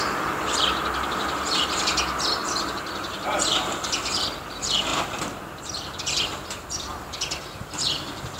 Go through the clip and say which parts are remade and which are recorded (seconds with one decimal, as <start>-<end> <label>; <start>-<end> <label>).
0.0-2.4 remade; 2.4-3.0 recorded; 3.0-8.4 remade